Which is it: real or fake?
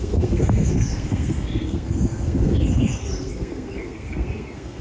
fake